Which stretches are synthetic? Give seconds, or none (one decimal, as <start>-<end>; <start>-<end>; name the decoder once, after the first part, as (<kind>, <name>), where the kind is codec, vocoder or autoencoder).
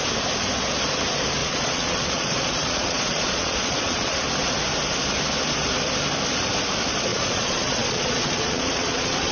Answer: 1.4-4.2 (vocoder, Vocos); 7.1-9.3